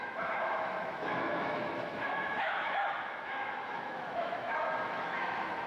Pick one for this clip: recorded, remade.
remade